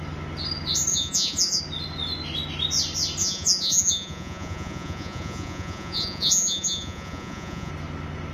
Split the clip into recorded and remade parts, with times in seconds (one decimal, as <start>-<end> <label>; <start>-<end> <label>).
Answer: 0.0-0.9 recorded; 0.9-1.6 remade; 1.6-3.2 recorded; 3.2-7.7 remade; 7.7-8.3 recorded